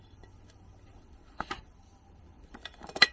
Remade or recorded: remade